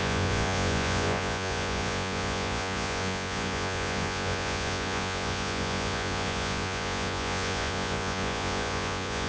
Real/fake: fake